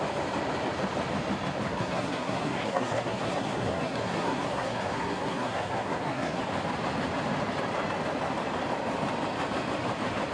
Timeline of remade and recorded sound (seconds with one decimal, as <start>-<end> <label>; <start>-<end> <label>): 0.0-1.7 recorded; 1.7-6.4 remade; 6.4-10.3 recorded